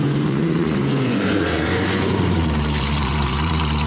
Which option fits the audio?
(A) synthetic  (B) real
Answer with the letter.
A